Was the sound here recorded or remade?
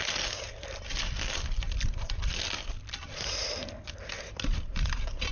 recorded